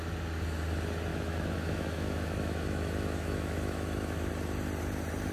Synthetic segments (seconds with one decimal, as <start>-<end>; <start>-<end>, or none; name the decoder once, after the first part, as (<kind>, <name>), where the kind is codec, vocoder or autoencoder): 1.1-4.3 (autoencoder, DAC-VAE)